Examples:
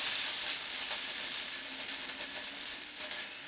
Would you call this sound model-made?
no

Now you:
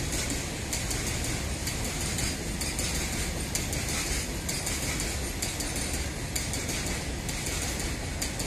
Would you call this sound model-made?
no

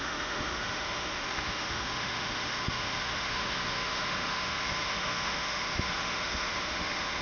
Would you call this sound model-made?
yes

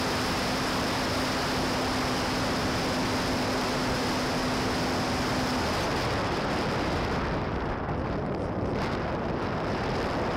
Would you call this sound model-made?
no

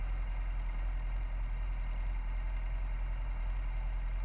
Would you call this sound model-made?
no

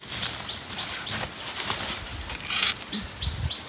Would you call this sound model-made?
no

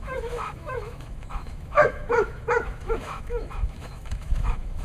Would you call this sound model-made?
yes